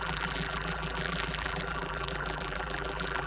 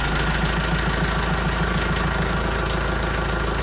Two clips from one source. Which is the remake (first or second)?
first